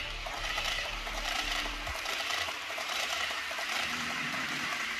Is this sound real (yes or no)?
no